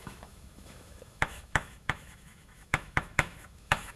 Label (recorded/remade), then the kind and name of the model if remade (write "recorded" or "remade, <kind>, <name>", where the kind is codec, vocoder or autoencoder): remade, autoencoder, DAC-VAE